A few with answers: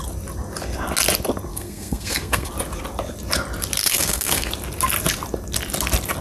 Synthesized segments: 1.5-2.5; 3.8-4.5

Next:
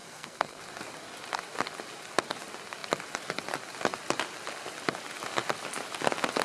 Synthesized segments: 0.0-0.6

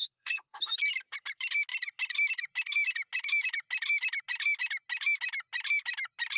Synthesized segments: 0.0-0.6

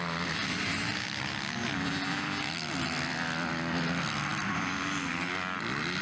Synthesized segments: none

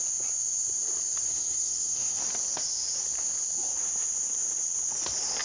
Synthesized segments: 1.3-2.2

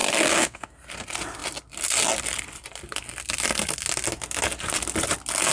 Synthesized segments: 0.0-0.7